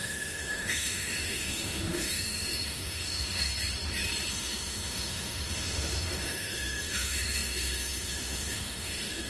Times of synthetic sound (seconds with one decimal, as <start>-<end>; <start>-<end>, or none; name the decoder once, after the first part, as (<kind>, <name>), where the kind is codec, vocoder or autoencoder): 0.0-3.5 (autoencoder, DAC-VAE); 4.3-9.3